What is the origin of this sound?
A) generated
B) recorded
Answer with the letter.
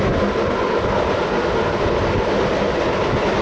B